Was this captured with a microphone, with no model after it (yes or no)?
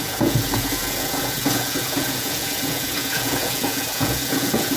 no